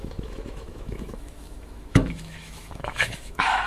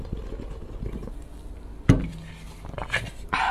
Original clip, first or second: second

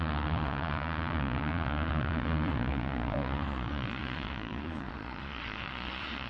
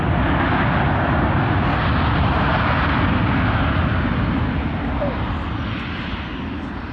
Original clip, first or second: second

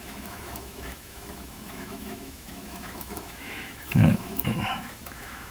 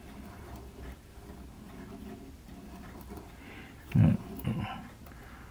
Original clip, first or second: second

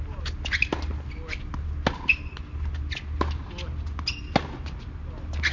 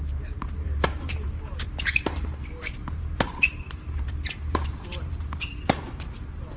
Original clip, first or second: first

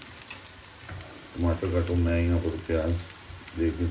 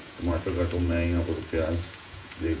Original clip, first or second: first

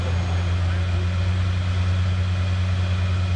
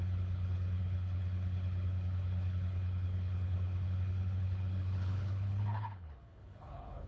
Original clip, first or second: first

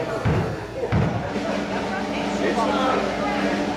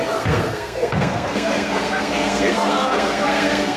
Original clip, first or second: first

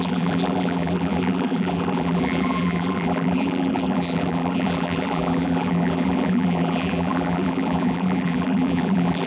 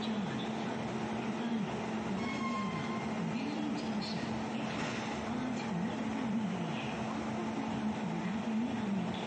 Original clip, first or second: second